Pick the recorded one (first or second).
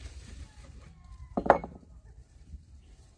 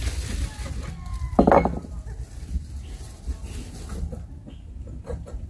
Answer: second